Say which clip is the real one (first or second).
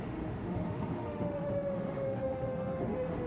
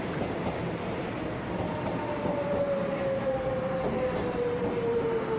second